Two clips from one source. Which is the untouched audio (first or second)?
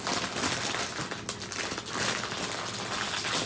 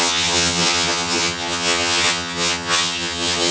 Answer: first